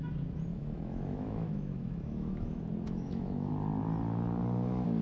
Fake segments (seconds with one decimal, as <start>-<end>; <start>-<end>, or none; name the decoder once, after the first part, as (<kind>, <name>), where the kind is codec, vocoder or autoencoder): 0.5-3.5 (autoencoder, DAC-VAE)